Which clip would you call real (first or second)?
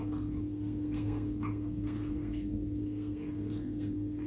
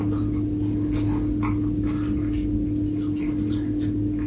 second